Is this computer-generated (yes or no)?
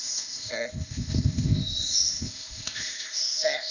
yes